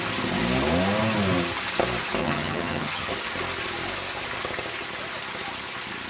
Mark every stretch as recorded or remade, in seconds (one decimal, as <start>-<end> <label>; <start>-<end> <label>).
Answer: 0.0-2.2 recorded; 2.2-3.1 remade; 3.1-6.1 recorded